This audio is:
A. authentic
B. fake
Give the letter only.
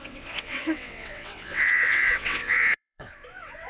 B